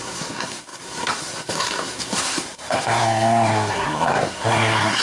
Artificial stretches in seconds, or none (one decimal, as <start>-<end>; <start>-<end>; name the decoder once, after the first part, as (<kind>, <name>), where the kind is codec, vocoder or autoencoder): 0.0-5.0 (codec, SNAC)